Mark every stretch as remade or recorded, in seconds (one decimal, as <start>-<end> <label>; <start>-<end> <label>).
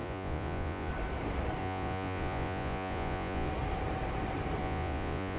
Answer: 0.0-0.9 remade; 0.9-1.6 recorded; 1.6-3.5 remade; 3.5-4.6 recorded; 4.6-5.4 remade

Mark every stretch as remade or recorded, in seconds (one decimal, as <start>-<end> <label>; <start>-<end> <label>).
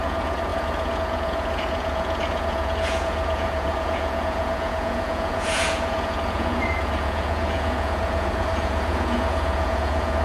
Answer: 0.0-10.2 remade